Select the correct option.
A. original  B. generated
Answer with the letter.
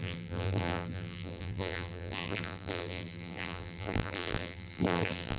B